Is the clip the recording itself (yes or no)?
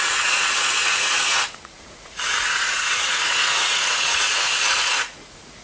no